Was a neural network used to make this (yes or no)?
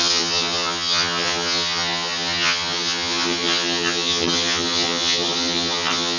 yes